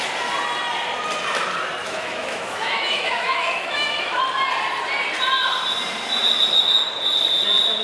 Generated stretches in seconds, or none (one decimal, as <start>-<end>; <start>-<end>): 1.8-4.2